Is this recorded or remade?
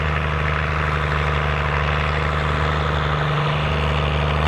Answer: recorded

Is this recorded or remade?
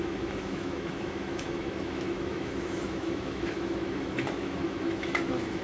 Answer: remade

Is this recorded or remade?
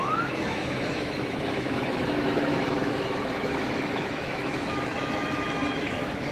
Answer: remade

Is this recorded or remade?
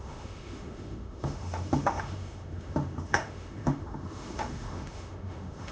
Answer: remade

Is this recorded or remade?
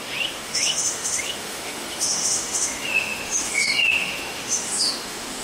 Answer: remade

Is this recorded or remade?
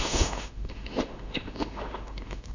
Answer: remade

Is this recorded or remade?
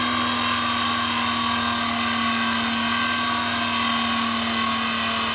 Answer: recorded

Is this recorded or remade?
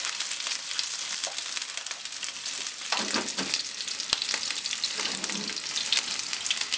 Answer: recorded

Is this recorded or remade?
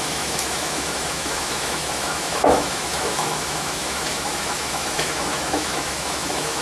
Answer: remade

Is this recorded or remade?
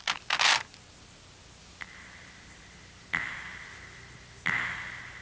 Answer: recorded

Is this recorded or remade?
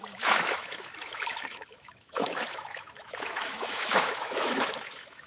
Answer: remade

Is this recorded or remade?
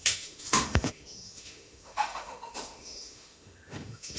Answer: remade